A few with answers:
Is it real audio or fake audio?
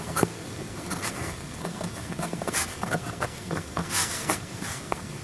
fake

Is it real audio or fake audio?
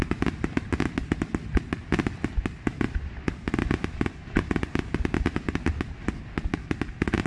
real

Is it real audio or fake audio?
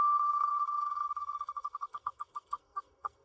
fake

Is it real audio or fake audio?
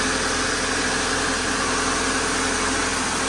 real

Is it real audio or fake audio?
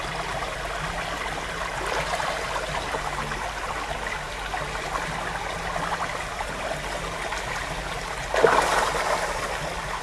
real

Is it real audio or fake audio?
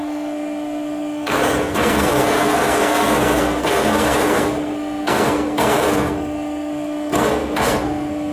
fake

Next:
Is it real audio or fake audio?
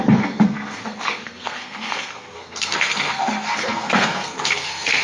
fake